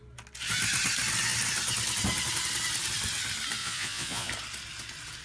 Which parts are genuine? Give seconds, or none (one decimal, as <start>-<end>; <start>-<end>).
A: 0.0-3.6; 4.3-5.2